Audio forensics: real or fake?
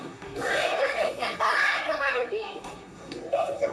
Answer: fake